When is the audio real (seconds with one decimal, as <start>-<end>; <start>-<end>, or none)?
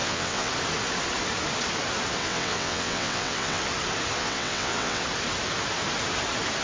0.5-2.2; 3.6-4.2; 5.0-6.6